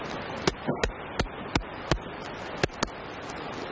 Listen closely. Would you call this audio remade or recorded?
recorded